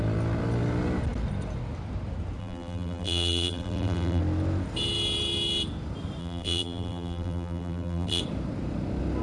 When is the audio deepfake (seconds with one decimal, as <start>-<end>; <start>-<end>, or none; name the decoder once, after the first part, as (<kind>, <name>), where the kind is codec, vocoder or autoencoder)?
2.4-4.2 (vocoder, BigVGAN v2); 6.2-8.2